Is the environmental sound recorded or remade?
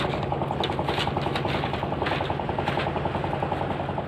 recorded